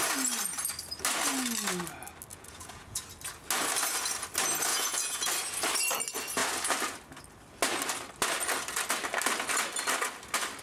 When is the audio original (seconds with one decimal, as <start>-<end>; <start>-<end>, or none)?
0.0-2.3; 3.0-4.7; 5.3-10.6